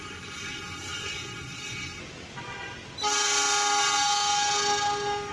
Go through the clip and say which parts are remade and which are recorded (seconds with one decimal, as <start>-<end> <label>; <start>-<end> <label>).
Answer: 0.0-2.0 remade; 2.0-5.3 recorded

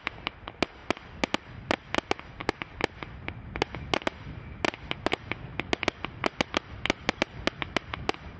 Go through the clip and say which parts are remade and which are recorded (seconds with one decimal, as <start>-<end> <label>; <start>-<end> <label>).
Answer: 0.0-8.4 recorded

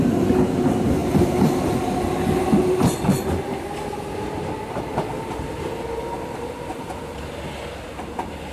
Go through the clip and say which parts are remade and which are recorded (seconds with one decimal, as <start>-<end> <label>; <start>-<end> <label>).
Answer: 0.0-8.5 recorded

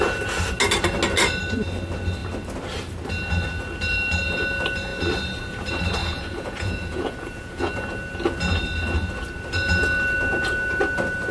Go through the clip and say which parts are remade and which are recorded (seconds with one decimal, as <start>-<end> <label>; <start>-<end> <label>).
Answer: 0.0-6.0 recorded; 6.0-7.7 remade; 7.7-11.3 recorded

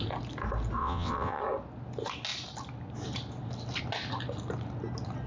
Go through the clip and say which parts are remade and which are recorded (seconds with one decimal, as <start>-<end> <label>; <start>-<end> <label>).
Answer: 0.0-0.8 recorded; 0.8-1.4 remade; 1.4-5.3 recorded

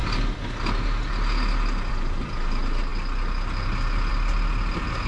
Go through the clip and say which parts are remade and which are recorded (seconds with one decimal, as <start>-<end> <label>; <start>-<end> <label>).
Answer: 0.0-5.1 recorded